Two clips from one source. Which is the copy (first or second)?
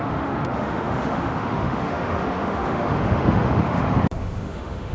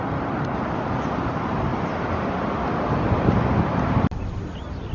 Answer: first